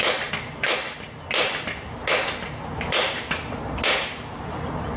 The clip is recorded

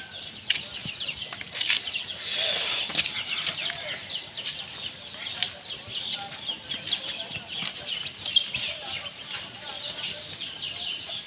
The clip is recorded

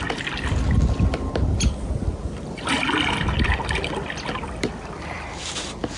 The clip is recorded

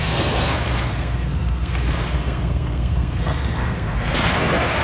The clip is remade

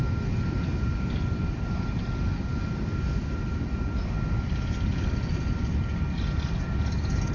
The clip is recorded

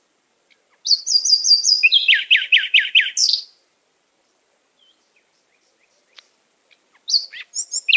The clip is recorded